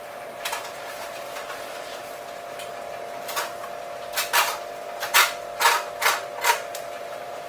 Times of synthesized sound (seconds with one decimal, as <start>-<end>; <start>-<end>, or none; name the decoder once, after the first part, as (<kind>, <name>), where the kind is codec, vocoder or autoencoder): 0.0-2.0 (vocoder, BigVGAN v2); 6.5-7.5